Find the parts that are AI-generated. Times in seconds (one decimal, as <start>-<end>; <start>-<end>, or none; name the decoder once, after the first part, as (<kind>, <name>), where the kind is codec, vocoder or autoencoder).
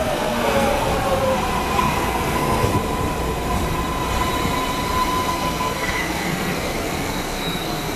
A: 0.0-0.9 (codec, SNAC); 1.6-2.7; 5.3-8.0